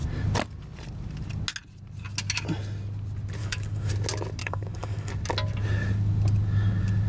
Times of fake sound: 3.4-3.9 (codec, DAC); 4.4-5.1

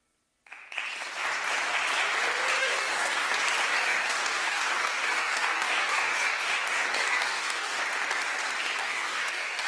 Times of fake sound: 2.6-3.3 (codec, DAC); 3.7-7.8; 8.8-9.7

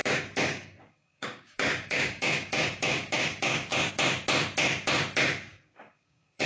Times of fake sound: 0.0-3.9 (codec, DAC); 5.5-6.5

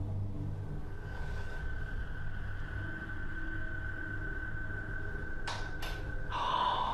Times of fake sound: 0.8-1.6 (codec, DAC)

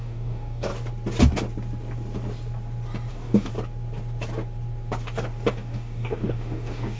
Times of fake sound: 0.0-0.7 (codec, DAC); 3.1-3.5; 5.5-7.0

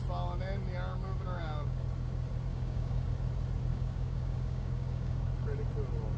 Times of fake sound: 0.9-1.8 (codec, DAC); 2.5-3.1; 3.7-5.3